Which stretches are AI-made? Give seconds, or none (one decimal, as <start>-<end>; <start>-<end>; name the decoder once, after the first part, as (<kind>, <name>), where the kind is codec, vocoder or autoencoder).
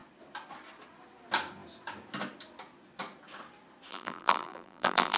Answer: 3.9-5.2 (vocoder, BigVGAN v2)